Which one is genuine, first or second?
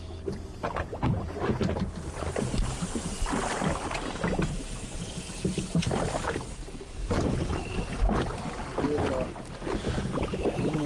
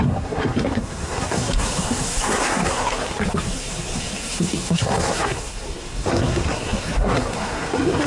first